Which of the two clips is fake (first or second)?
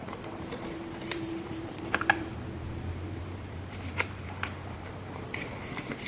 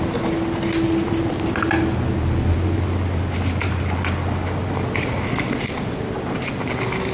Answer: first